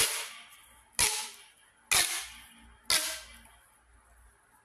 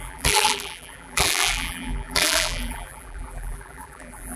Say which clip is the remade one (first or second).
second